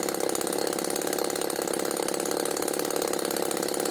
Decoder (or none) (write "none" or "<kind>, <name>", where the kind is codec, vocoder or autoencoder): none